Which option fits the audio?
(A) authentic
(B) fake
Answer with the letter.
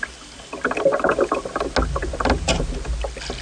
A